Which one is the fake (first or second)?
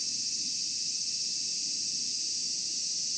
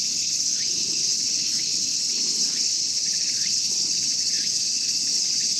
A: second